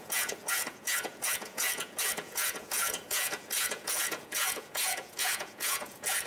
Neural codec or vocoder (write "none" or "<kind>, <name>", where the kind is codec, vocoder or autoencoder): vocoder, Vocos